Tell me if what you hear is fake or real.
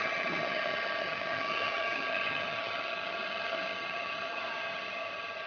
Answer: fake